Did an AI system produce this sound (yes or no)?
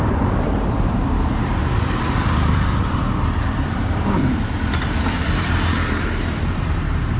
yes